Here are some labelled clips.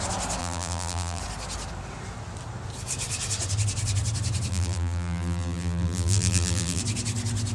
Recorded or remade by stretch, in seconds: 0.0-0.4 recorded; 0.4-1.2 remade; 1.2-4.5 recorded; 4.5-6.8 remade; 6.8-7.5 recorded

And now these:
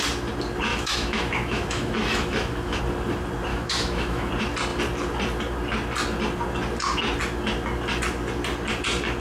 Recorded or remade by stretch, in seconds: 0.0-0.7 recorded; 0.7-2.8 remade; 2.8-3.5 recorded; 3.5-4.3 remade; 4.3-9.2 recorded

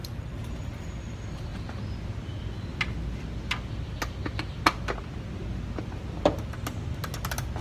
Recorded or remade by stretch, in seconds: 0.0-7.6 recorded